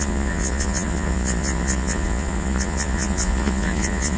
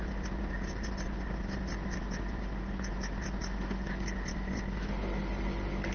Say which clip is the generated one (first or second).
first